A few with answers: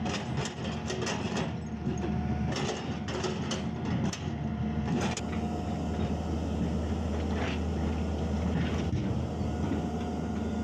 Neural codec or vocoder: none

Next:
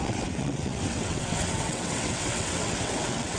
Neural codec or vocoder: vocoder, WaveNeXt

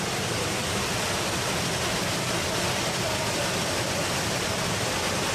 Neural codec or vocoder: none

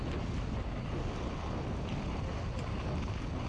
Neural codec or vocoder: none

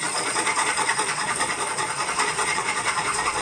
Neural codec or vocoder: vocoder, Vocos